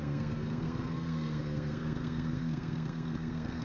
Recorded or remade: remade